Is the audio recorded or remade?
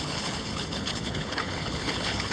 remade